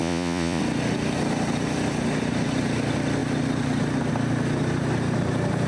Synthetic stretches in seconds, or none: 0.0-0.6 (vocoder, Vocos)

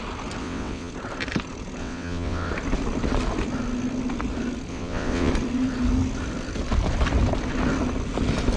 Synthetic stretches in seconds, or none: 0.4-0.9 (vocoder, WaveNeXt); 1.8-2.5; 4.7-5.3